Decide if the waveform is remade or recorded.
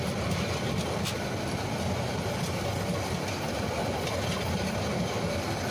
recorded